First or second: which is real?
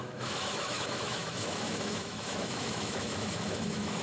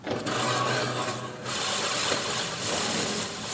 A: second